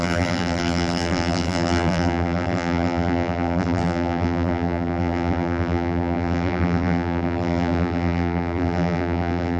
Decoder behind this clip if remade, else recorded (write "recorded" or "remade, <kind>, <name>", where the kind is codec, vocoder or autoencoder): remade, vocoder, BigVGAN v2